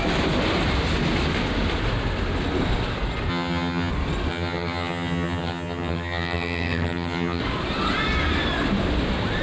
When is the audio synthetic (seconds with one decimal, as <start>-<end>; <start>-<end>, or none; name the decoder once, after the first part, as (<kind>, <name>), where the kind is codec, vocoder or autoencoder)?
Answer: 3.3-3.9 (vocoder, HiFi-GAN); 4.3-7.4